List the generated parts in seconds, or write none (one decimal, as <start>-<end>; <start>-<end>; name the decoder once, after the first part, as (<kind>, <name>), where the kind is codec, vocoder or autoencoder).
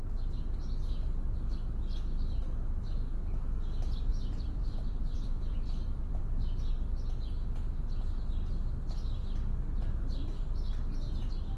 4.1-6.2 (vocoder, BigVGAN v2)